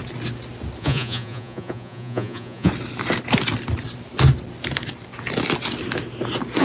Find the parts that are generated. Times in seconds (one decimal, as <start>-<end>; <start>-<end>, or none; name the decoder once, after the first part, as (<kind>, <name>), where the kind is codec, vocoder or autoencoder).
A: 0.8-2.7 (vocoder, Vocos)